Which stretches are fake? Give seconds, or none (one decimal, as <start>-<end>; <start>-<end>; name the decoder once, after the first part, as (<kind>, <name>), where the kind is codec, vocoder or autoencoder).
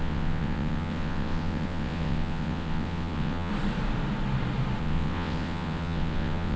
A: 0.0-3.5 (vocoder, WaveNeXt); 4.8-6.6